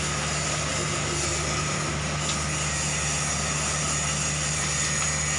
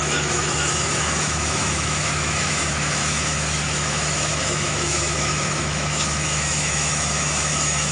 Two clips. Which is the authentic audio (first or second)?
first